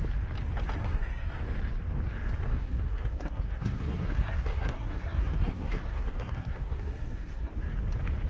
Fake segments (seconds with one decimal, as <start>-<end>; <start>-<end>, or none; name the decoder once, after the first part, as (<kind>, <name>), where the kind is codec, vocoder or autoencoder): 0.8-1.4 (codec, SNAC); 2.5-7.5